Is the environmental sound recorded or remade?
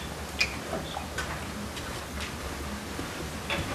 recorded